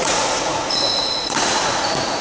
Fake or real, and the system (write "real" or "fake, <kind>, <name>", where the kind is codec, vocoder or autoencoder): fake, vocoder, Vocos